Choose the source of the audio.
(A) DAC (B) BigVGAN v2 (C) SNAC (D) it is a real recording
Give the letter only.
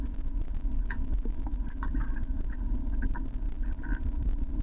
D